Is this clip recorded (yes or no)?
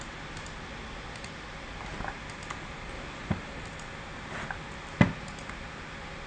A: yes